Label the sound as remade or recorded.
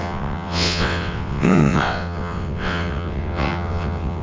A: remade